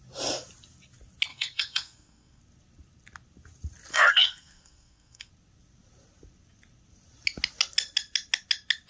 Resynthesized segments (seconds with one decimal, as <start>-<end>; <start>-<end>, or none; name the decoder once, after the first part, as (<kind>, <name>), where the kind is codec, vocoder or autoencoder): 1.3-2.4 (codec, SNAC); 3.9-5.3